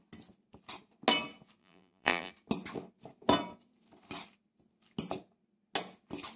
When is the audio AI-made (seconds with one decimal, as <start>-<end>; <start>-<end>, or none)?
1.6-2.3